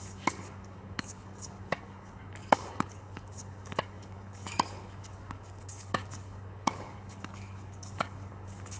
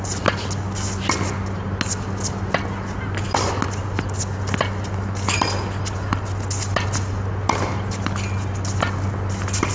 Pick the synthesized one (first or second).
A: first